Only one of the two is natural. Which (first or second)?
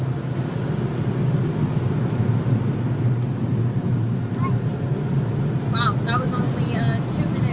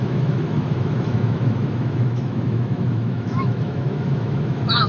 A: first